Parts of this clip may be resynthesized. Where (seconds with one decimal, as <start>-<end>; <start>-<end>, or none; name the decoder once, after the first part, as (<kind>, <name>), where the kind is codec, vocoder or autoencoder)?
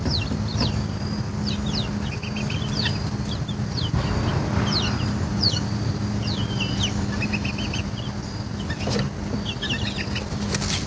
none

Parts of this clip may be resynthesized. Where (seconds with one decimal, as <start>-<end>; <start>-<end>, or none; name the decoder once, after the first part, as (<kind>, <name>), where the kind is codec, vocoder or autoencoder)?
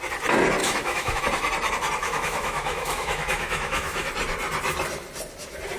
0.6-1.2 (autoencoder, DAC-VAE); 2.0-4.1